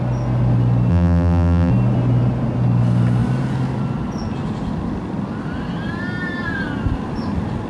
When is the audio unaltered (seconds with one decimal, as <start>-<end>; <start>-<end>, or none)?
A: 0.0-0.9; 1.7-7.7